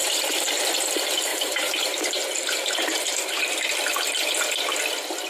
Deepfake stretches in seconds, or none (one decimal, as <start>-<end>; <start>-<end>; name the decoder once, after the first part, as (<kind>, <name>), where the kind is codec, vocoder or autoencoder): 0.0-0.6 (vocoder, BigVGAN v2); 1.3-3.4